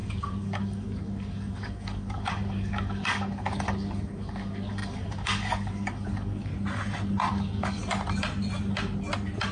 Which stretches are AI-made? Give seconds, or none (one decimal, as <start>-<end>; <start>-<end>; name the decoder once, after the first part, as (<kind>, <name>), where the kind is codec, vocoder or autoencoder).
0.0-6.5 (codec, DAC); 7.3-7.8